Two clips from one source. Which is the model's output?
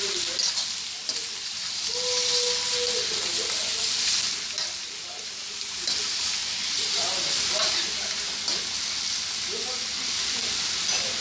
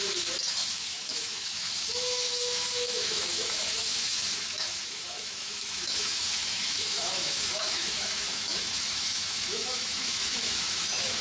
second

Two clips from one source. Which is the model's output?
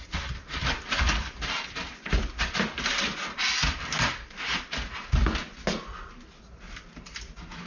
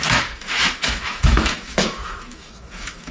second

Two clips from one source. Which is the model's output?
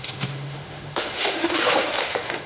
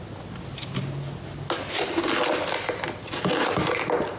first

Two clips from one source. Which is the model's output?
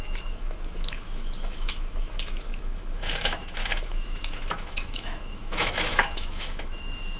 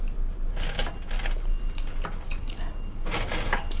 first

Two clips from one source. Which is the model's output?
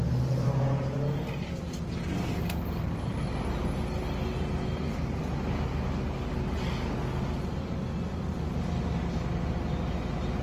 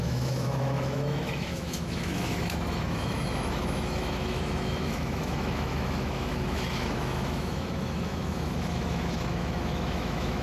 second